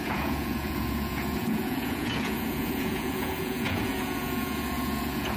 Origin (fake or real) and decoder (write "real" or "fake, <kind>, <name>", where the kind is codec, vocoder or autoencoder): fake, vocoder, Vocos